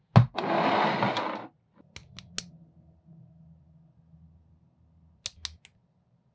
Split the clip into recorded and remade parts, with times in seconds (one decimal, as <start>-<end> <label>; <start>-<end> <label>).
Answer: 0.0-6.3 recorded